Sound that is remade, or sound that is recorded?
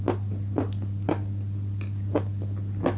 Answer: recorded